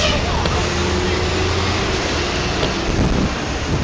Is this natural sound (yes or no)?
yes